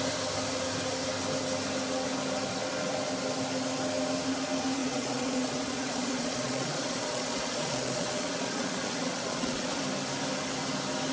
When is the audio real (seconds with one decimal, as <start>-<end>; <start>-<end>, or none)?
0.0-4.8; 9.8-11.1